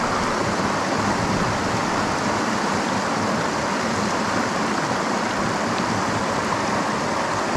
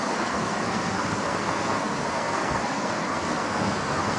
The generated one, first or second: second